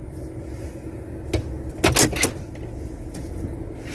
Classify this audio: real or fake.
real